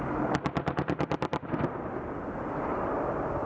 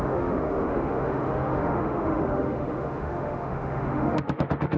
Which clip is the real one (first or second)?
first